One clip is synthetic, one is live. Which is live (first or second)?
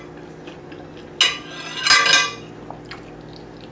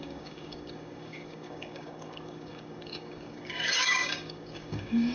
first